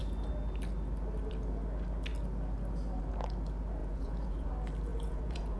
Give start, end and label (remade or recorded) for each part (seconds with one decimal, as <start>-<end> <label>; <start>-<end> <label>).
0.0-3.8 recorded; 3.8-4.5 remade; 4.5-4.9 recorded; 4.9-5.6 remade